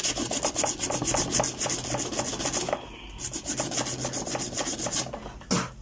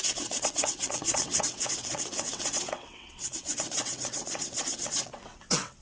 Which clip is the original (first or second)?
first